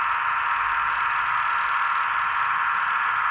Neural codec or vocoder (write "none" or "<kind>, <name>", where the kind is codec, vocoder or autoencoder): none